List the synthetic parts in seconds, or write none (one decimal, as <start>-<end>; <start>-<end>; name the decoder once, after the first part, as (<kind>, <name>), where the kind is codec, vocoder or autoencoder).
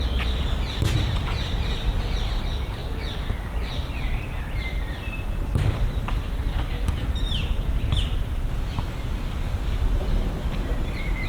none